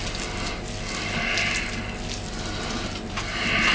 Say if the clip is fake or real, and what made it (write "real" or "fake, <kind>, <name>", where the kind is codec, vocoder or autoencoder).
real